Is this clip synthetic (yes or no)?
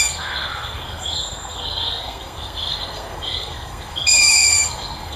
yes